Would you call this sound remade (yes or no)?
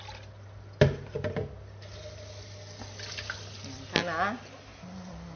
no